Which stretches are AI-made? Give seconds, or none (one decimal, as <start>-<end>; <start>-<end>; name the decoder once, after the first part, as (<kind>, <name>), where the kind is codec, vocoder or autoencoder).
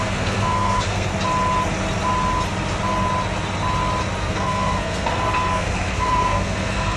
0.0-1.1 (codec, SNAC); 4.2-7.0